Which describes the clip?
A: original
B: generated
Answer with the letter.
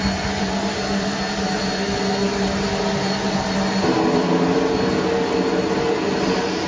A